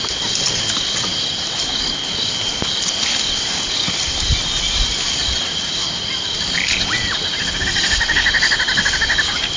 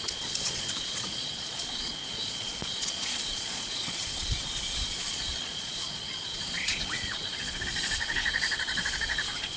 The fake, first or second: second